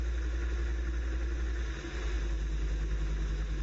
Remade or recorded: recorded